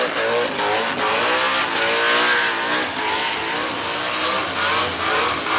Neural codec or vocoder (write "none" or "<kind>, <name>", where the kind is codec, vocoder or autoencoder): none